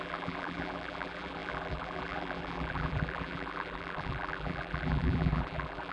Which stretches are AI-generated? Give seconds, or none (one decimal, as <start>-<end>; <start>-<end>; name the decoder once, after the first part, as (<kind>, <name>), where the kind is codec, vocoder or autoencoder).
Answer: 0.0-5.9 (vocoder, BigVGAN v2)